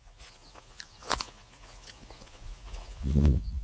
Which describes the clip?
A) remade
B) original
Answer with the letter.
A